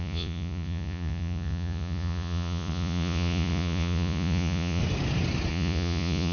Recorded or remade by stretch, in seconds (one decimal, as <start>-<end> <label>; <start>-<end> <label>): 0.0-4.8 remade; 4.8-5.5 recorded; 5.5-6.3 remade